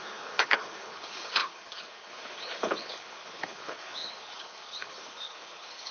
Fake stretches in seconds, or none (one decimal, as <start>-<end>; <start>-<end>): 0.0-5.9